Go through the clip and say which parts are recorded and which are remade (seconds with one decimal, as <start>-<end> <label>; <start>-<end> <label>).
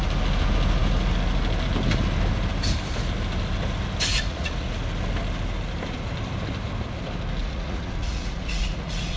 0.0-4.1 recorded; 4.1-4.7 remade; 4.7-7.4 recorded; 7.4-9.2 remade